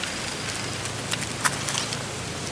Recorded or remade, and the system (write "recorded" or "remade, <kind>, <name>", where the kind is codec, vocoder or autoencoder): recorded